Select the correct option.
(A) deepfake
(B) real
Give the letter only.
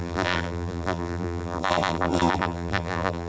A